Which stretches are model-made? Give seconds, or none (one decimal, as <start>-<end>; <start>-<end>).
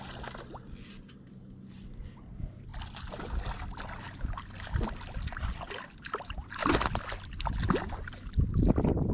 none